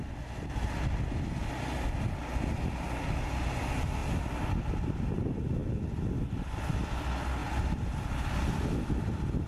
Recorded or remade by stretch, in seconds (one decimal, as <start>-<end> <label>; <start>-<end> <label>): 0.0-9.5 recorded